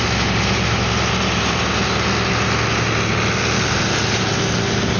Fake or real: real